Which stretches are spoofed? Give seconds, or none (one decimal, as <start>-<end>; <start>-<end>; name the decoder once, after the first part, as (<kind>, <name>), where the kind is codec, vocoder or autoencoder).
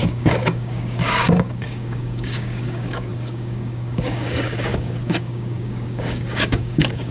0.0-7.1 (codec, DAC)